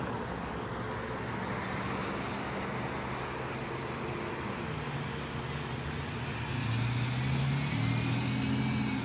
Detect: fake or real real